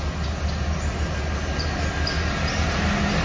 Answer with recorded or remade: recorded